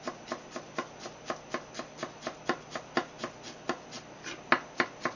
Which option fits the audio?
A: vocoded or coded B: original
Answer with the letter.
B